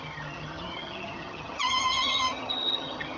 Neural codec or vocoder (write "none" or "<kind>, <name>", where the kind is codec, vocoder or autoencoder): vocoder, HiFi-GAN